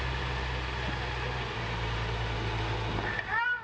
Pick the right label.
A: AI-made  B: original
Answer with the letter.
B